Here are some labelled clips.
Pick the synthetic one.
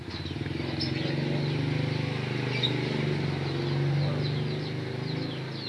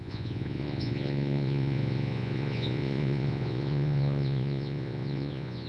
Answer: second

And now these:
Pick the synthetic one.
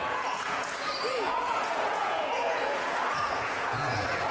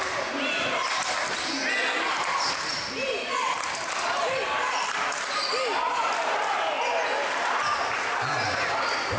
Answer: first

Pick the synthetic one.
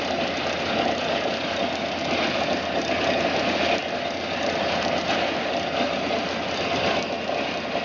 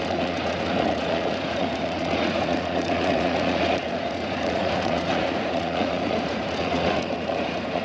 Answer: second